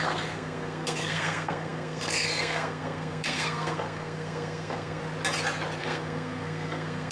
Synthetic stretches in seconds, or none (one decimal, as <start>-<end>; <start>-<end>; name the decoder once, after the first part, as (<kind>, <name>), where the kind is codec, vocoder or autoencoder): 0.0-5.0 (codec, SNAC); 5.8-7.1